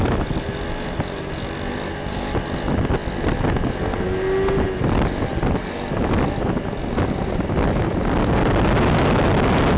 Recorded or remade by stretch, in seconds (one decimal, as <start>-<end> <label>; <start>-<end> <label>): 0.0-9.8 recorded